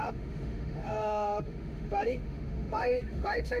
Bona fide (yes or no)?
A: no